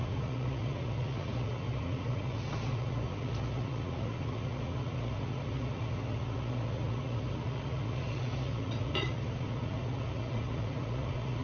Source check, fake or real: fake